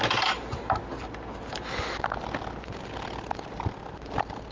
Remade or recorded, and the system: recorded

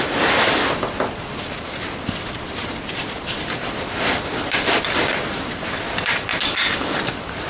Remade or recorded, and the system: remade, vocoder, BigVGAN v2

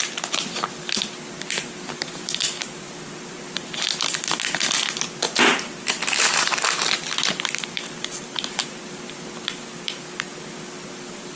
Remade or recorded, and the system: recorded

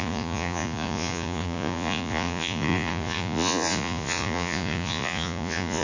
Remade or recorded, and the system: remade, vocoder, Vocos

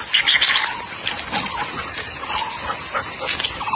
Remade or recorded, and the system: recorded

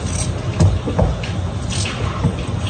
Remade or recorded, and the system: recorded